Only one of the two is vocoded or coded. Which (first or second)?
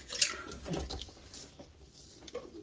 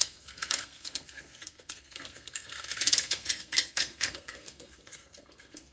second